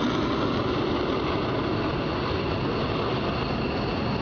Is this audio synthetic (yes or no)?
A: no